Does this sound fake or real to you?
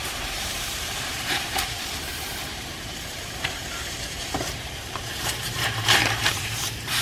fake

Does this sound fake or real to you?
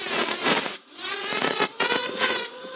fake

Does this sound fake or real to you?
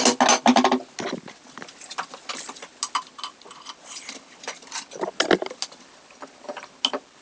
real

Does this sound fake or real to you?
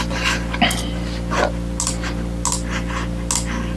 real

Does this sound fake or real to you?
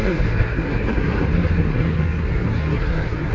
fake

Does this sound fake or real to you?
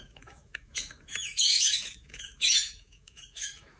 fake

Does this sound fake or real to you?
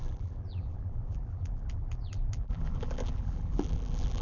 fake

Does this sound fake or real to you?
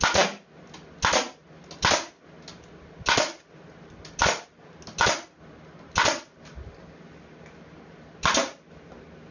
real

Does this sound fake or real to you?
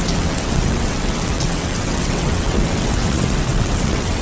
fake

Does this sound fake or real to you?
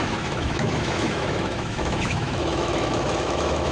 fake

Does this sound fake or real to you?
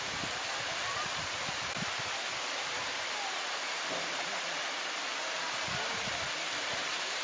fake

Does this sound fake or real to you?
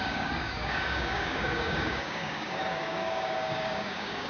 fake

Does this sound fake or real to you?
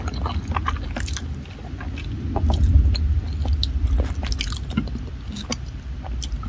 real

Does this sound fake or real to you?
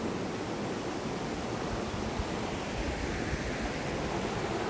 real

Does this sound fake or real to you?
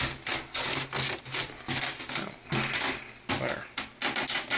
real